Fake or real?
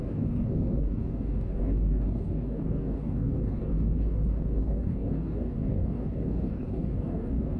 fake